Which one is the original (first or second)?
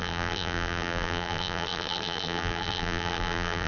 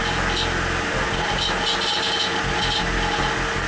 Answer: second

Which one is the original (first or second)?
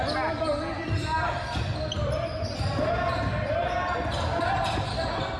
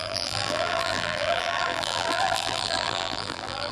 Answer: first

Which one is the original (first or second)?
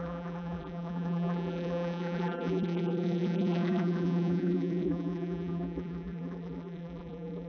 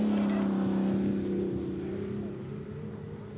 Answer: second